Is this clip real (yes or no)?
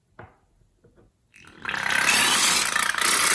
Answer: yes